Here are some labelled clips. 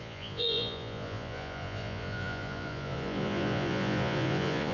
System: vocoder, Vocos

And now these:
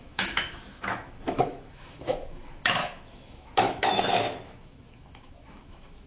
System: autoencoder, DAC-VAE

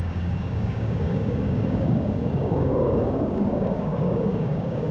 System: codec, DAC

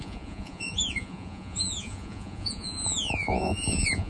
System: vocoder, Vocos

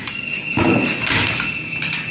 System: none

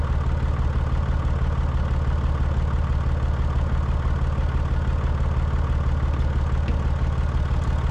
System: none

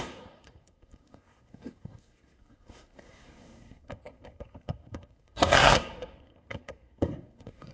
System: codec, SNAC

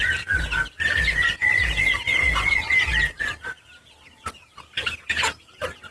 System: none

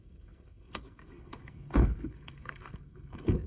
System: codec, SNAC